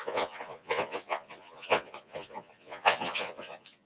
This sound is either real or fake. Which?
fake